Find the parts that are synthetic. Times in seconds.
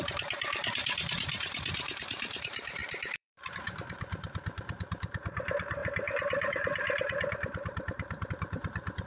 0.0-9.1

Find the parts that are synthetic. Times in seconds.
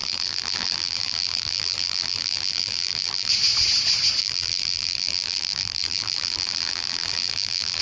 0.0-3.3; 4.2-7.8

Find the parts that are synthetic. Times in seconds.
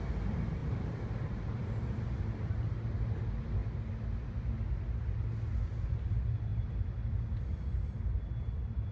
0.6-2.5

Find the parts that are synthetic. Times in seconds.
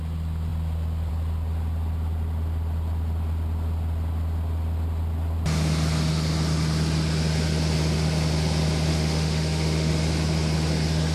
8.9-9.9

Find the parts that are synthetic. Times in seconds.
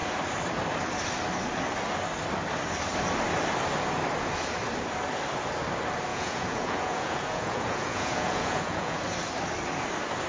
6.1-9.0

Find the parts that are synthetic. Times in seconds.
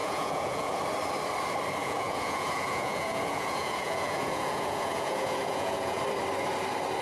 0.0-0.8; 1.8-6.0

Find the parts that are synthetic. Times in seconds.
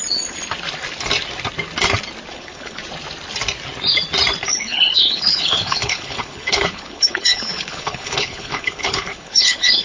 2.3-2.8; 4.5-9.8